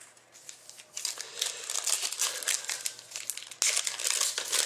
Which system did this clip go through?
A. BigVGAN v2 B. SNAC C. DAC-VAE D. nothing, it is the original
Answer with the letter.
D